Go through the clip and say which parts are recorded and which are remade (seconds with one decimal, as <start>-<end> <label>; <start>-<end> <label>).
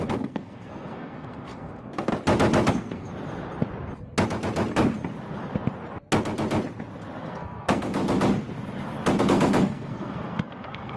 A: 0.0-2.1 remade; 2.1-2.7 recorded; 2.7-3.1 remade; 3.1-7.2 recorded; 7.2-8.0 remade; 8.0-9.2 recorded; 9.2-11.0 remade